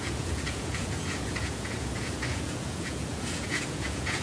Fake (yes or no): yes